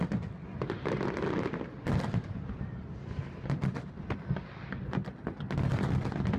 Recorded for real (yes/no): yes